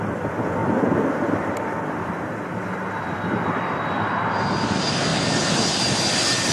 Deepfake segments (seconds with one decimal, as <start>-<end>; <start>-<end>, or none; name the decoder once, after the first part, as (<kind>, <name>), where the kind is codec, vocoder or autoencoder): none